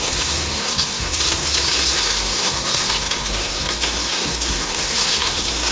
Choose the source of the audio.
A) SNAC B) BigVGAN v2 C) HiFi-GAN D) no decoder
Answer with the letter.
A